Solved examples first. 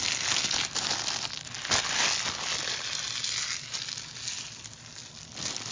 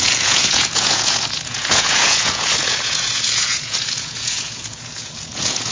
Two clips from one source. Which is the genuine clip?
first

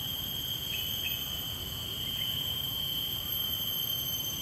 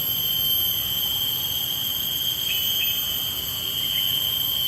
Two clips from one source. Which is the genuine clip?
second